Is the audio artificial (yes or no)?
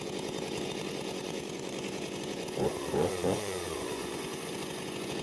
yes